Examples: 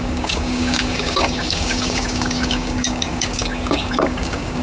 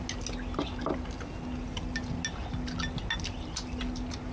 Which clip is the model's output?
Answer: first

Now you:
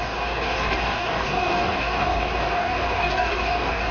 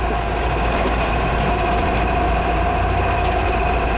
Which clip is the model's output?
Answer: first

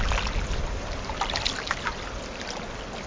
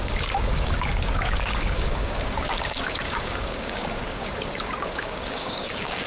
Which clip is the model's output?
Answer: second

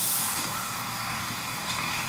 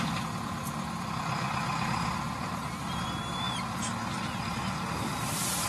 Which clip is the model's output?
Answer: first